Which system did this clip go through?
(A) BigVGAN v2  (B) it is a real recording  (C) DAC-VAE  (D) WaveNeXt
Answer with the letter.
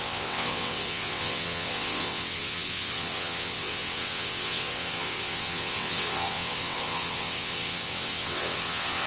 D